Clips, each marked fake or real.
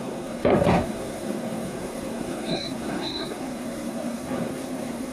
fake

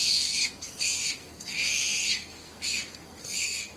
fake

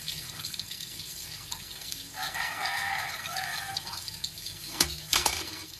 fake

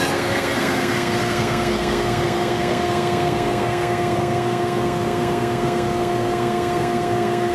fake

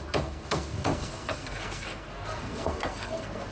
fake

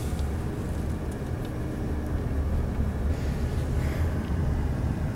real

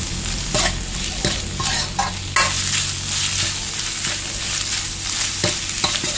real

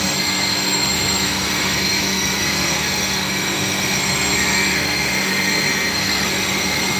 fake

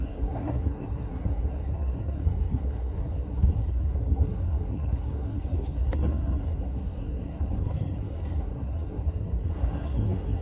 fake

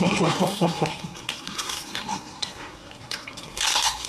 fake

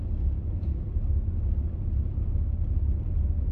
real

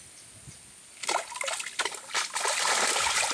real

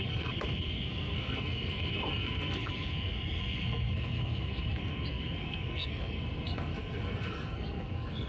fake